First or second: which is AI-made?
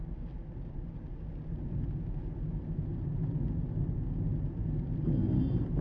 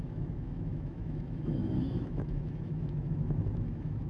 second